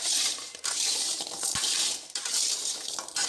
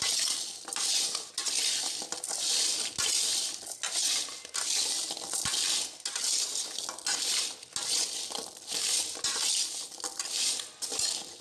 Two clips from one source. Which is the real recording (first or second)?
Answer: second